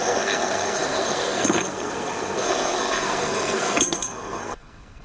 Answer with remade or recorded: remade